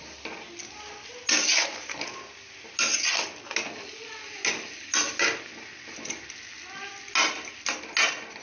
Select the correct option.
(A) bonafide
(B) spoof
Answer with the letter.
A